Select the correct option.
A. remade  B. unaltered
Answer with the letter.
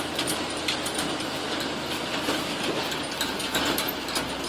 B